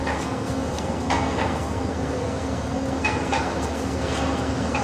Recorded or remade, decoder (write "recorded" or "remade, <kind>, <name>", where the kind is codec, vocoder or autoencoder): remade, codec, SNAC